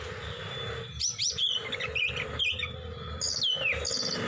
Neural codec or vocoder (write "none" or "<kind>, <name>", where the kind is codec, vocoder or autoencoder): none